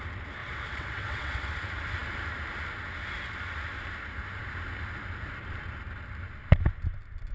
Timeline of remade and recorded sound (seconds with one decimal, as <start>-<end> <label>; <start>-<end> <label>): 0.0-0.4 recorded; 0.4-1.5 remade; 1.5-7.3 recorded